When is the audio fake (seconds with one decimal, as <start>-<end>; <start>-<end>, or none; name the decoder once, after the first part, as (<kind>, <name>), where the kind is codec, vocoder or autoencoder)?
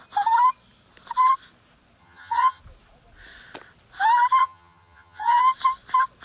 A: 2.0-2.6 (vocoder, HiFi-GAN); 4.4-5.4